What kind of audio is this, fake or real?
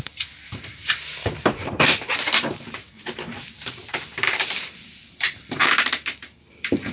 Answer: fake